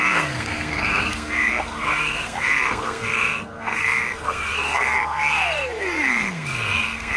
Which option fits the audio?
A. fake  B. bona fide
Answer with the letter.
A